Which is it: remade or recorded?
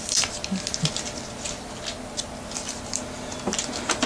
recorded